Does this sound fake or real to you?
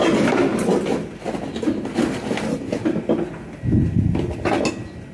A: real